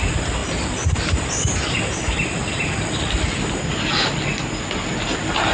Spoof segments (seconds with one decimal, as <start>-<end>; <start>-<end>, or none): none